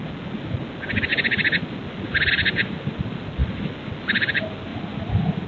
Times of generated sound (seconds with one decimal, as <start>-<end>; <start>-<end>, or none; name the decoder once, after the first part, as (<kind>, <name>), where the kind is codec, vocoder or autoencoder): none